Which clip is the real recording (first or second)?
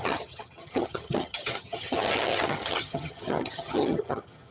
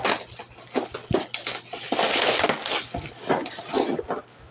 second